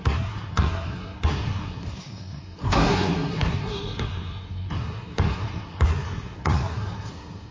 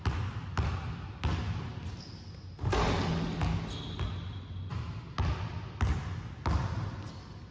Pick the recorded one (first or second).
second